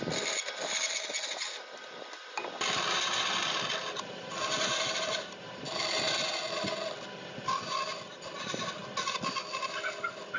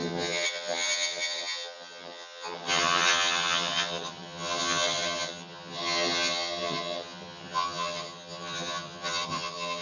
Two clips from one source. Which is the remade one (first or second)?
second